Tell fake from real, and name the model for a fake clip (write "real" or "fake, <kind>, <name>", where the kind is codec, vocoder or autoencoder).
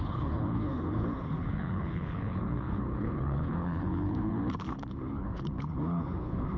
fake, codec, HILCodec